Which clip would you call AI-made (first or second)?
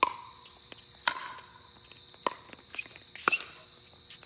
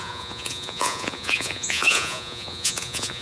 second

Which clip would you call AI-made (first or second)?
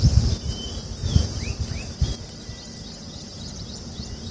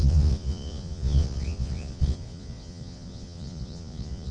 second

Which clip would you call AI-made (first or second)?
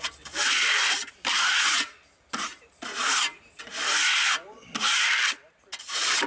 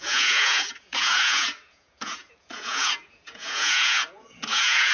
second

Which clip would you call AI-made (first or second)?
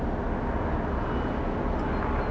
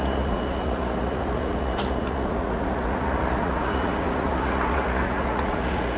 second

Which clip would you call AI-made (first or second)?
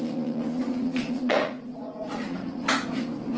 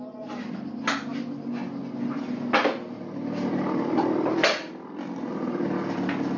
first